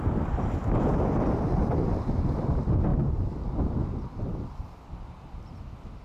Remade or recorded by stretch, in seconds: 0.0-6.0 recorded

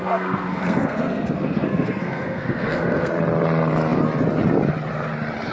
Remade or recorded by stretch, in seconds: 0.0-3.1 remade; 3.1-5.5 recorded

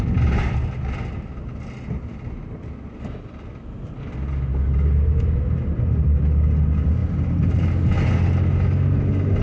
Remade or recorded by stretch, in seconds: 0.0-9.4 recorded

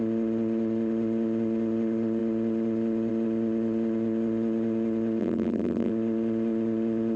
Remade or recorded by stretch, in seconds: 0.0-5.2 recorded; 5.2-5.9 remade; 5.9-7.2 recorded

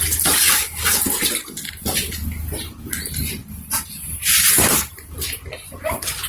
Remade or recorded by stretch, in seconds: 0.0-0.4 recorded; 0.4-1.0 remade; 1.0-6.3 recorded

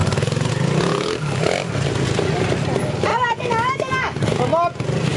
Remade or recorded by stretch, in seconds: 0.0-0.5 remade; 0.5-0.9 recorded; 0.9-1.7 remade; 1.7-3.1 recorded; 3.1-4.4 remade; 4.4-5.2 recorded